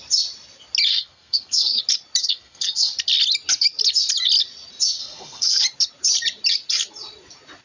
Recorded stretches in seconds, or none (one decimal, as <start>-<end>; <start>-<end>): 0.0-0.9; 1.8-2.2; 2.9-5.0; 5.6-7.6